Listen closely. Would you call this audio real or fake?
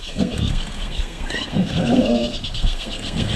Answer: fake